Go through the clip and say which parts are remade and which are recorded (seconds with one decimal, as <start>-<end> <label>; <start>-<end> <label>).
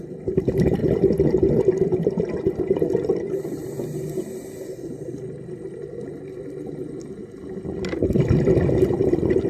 0.0-9.5 recorded